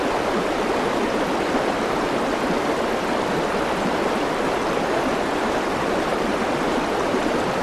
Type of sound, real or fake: real